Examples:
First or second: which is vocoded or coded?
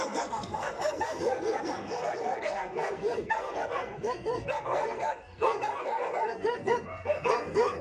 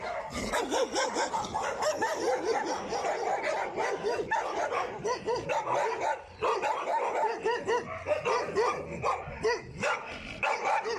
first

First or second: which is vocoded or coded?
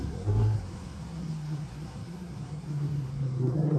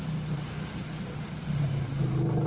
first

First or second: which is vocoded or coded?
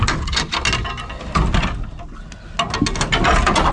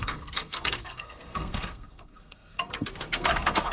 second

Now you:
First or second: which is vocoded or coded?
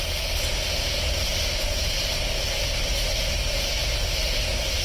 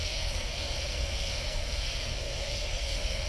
second